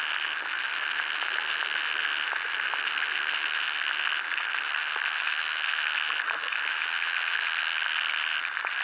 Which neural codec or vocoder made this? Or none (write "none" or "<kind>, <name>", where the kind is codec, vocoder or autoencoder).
none